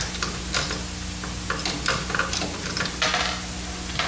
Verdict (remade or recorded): recorded